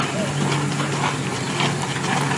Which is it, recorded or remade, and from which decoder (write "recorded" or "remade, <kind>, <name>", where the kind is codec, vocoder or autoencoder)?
recorded